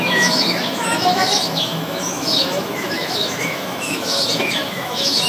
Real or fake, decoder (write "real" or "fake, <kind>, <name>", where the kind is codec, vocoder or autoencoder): fake, autoencoder, DAC-VAE